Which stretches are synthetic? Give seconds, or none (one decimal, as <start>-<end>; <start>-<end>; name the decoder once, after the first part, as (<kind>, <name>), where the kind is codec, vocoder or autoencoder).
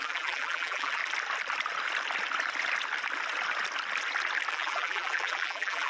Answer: 0.0-1.0 (vocoder, BigVGAN v2); 4.5-5.9